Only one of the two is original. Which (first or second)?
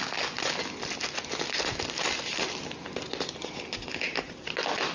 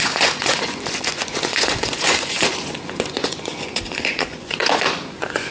first